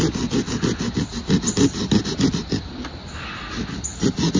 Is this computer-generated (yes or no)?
no